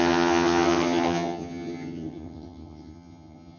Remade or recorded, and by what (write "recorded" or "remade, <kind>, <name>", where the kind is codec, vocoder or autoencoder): remade, vocoder, HiFi-GAN